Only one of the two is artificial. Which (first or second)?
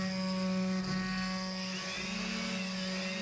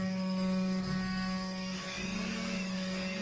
second